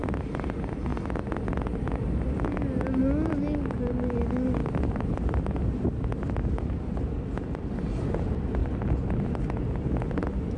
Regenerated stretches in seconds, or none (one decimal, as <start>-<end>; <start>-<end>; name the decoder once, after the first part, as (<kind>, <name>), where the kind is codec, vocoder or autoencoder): 4.6-6.3 (vocoder, BigVGAN v2); 8.6-9.3